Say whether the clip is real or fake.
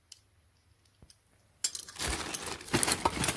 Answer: real